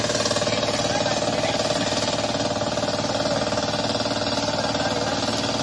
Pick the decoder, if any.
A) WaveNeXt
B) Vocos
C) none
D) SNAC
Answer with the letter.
C